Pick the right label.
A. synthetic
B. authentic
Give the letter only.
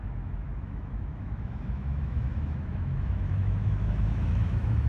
A